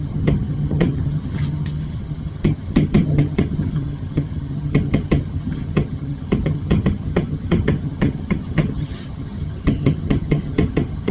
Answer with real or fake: fake